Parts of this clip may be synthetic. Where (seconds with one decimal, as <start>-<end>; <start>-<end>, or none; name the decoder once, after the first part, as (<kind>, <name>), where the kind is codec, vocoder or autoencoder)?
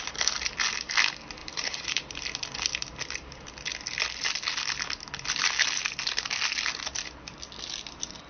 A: 1.4-2.2 (vocoder, BigVGAN v2)